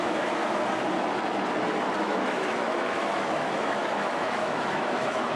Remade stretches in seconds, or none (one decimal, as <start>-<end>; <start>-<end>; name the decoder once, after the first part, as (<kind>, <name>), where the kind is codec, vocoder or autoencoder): 0.0-0.4 (autoencoder, DAC-VAE); 2.0-5.4